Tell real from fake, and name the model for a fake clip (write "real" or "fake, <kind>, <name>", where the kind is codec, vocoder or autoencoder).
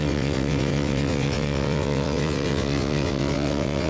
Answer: fake, vocoder, WaveNeXt